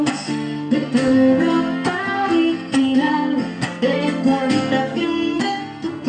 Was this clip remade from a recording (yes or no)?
yes